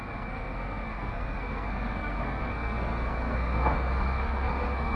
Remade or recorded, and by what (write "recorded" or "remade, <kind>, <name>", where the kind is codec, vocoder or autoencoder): remade, codec, SNAC